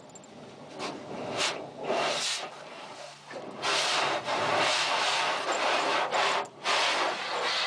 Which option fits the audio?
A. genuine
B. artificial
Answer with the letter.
A